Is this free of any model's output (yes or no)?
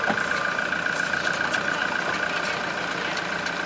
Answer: yes